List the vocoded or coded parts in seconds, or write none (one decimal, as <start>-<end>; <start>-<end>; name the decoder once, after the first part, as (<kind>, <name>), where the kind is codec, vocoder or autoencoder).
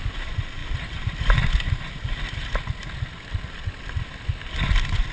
none